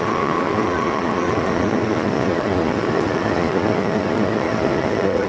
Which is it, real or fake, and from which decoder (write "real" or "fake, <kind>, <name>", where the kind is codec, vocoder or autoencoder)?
fake, vocoder, Vocos